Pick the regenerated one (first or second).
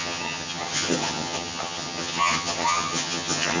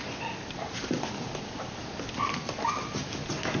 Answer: first